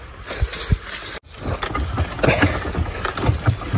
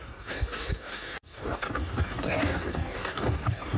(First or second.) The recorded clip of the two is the first